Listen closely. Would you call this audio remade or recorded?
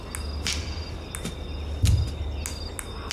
recorded